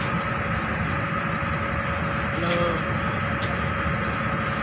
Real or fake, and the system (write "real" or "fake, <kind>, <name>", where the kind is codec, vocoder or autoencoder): real